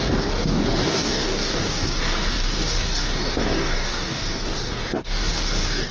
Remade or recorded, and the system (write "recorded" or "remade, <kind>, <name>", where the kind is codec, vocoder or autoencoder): remade, codec, DAC